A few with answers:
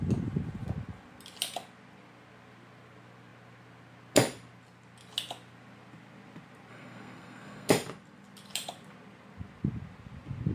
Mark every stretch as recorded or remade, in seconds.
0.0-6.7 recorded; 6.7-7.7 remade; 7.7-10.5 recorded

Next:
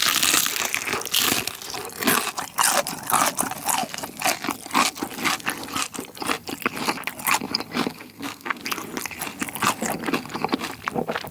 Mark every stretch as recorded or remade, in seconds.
0.0-7.9 recorded; 7.9-8.6 remade; 8.6-11.3 recorded

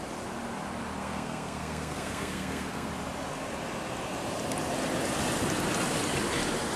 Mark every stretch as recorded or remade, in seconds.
0.0-1.0 recorded; 1.0-2.9 remade; 2.9-6.8 recorded